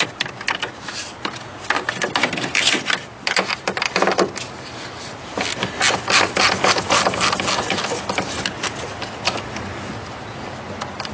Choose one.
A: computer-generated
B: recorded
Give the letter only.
B